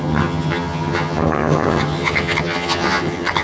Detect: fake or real fake